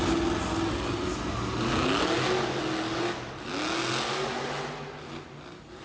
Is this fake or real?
real